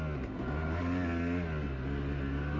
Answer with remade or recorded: recorded